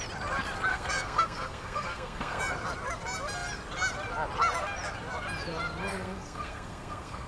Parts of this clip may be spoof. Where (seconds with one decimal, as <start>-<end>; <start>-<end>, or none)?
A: 0.7-2.4; 5.9-7.3